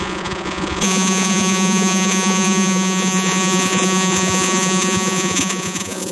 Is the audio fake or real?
fake